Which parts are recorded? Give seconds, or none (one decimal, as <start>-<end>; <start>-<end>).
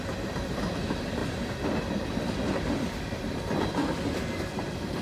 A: 0.0-1.2; 4.2-5.0